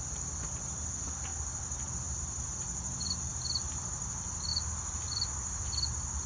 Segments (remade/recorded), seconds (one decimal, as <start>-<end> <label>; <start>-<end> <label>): 0.0-3.3 recorded; 3.3-3.9 remade; 3.9-6.3 recorded